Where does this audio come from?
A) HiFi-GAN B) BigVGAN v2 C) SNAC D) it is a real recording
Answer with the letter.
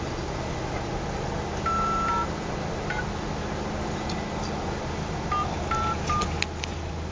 D